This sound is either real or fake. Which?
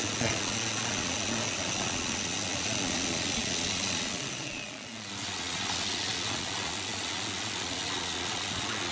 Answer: fake